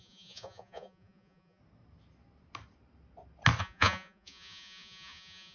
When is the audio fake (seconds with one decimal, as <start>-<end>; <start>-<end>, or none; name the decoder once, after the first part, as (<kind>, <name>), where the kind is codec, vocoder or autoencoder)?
0.0-1.6 (vocoder, Vocos); 3.6-5.5